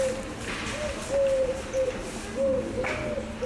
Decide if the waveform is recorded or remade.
recorded